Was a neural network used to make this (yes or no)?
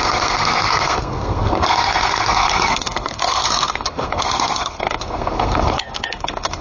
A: yes